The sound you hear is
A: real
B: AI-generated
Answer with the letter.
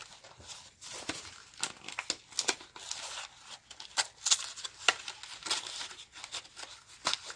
A